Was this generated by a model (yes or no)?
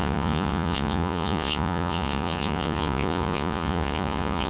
yes